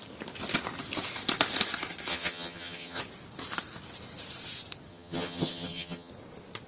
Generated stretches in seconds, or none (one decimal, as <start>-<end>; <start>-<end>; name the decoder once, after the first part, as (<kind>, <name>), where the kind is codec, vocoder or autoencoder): 2.1-3.0 (vocoder, HiFi-GAN); 4.9-6.1